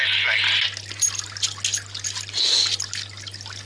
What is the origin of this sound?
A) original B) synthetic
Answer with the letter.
A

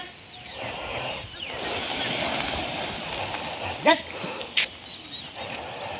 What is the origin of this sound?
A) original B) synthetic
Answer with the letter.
A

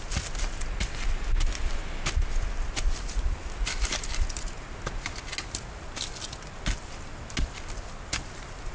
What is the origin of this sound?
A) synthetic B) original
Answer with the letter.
B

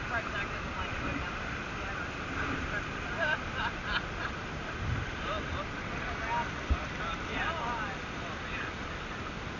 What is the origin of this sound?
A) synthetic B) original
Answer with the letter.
B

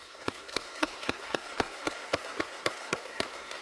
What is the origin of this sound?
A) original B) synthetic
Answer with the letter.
B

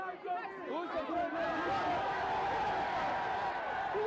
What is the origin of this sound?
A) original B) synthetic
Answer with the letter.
A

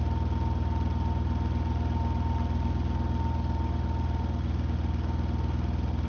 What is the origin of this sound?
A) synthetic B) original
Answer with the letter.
B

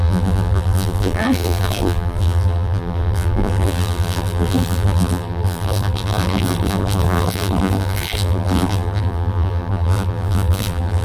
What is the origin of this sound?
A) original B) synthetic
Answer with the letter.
B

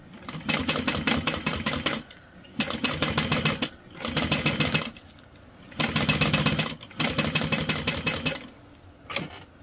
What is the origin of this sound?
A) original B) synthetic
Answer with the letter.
A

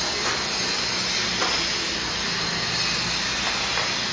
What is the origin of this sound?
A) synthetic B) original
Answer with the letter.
B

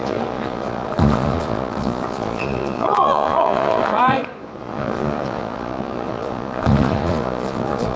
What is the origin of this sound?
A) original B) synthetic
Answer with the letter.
B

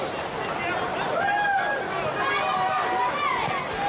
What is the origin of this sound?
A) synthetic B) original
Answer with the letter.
B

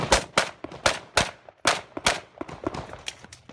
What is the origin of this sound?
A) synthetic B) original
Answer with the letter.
B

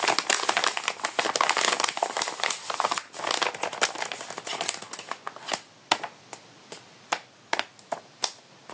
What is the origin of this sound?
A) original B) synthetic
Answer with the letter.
A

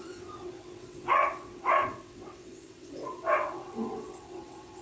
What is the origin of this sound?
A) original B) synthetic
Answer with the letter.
B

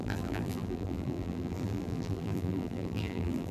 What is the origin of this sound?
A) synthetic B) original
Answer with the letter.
A